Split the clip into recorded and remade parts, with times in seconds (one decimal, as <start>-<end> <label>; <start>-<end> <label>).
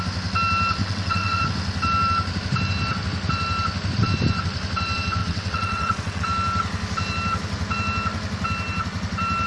0.0-0.8 recorded; 0.8-1.4 remade; 1.4-5.2 recorded; 5.2-6.2 remade; 6.2-9.5 recorded